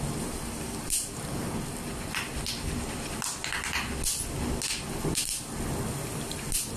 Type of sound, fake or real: real